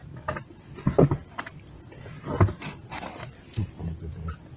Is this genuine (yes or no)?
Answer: yes